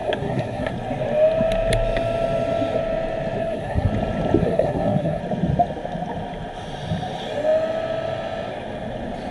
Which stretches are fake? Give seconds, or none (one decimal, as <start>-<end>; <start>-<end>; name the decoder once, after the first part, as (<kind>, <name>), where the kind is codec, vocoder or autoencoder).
0.0-0.7 (codec, SNAC); 3.4-3.9; 4.4-5.2